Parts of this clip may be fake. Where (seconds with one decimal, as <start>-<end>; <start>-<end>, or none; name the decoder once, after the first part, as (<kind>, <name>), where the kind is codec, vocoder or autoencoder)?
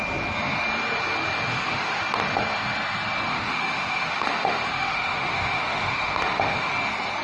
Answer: 1.5-2.0 (autoencoder, DAC-VAE); 3.3-6.7